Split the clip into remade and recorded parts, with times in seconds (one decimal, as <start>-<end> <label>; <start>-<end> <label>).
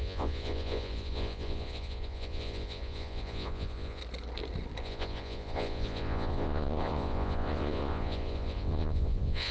0.0-4.0 remade; 4.0-4.8 recorded; 4.8-9.5 remade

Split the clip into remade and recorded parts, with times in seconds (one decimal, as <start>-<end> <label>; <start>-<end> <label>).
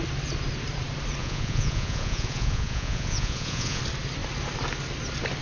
0.0-1.2 recorded; 1.2-3.8 remade; 3.8-5.4 recorded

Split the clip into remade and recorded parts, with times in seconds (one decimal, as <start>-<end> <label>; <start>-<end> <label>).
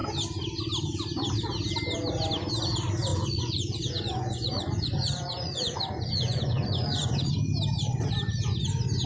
0.0-3.1 recorded; 3.1-7.3 remade; 7.3-9.1 recorded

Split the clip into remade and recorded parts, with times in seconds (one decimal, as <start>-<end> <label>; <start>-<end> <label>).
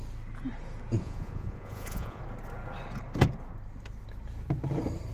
0.0-1.0 recorded; 1.0-2.2 remade; 2.2-5.1 recorded